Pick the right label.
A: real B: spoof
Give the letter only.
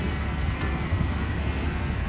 B